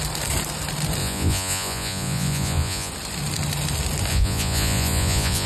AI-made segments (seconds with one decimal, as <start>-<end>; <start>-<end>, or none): 1.0-2.9; 4.1-5.5

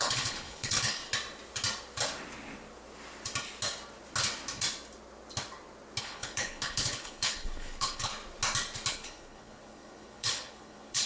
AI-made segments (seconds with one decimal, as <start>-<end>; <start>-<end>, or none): 0.0-1.0; 6.0-8.1; 8.9-11.1

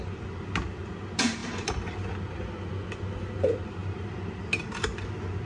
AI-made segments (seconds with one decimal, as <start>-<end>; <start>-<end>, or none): none

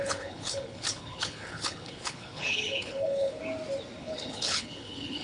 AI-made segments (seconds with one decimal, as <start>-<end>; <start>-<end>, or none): 0.0-3.4; 4.0-5.2